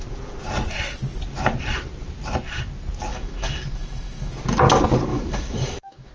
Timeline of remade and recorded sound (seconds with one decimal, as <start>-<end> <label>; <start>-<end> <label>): 0.0-3.1 recorded; 3.1-4.3 remade; 4.3-5.1 recorded; 5.1-6.1 remade

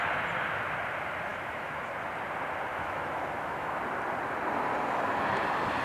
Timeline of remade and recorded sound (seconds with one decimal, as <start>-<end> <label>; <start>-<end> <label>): 0.0-1.3 recorded; 1.3-1.9 remade; 1.9-2.7 recorded; 2.7-3.8 remade; 3.8-5.8 recorded

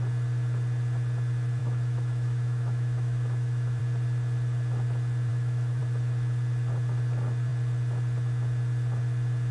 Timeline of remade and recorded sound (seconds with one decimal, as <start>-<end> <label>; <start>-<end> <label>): 0.0-1.6 recorded; 1.6-3.8 remade; 3.8-5.3 recorded; 5.3-5.8 remade; 5.8-9.5 recorded